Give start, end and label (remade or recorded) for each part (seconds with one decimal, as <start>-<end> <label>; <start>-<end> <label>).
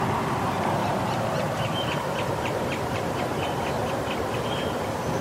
0.0-0.8 recorded; 0.8-3.9 remade; 3.9-5.2 recorded